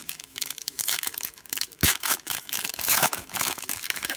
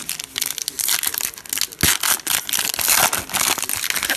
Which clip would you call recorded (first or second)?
second